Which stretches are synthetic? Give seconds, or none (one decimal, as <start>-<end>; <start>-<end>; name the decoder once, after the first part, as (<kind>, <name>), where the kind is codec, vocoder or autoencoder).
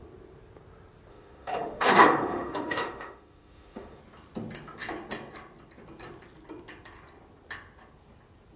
1.1-4.0 (autoencoder, DAC-VAE)